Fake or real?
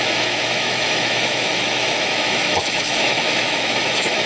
fake